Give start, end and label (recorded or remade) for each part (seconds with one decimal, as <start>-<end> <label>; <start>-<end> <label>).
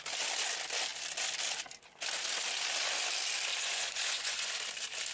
0.0-3.5 recorded; 3.5-4.5 remade; 4.5-5.1 recorded